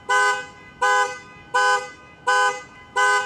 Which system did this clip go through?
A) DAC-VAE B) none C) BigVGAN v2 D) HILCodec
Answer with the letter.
B